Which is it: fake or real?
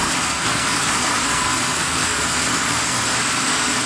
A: fake